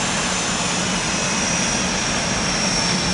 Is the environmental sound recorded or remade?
recorded